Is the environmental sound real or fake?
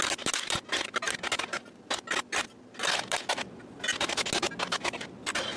real